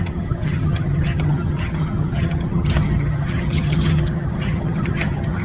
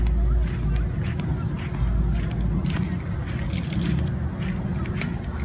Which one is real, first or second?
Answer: second